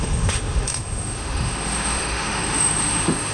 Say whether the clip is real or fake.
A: fake